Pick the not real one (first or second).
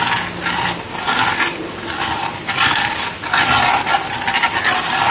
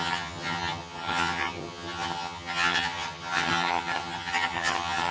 second